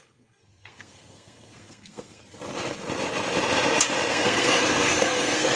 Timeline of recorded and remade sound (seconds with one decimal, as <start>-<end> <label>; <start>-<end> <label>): 0.0-2.2 remade; 2.2-4.1 recorded; 4.1-5.6 remade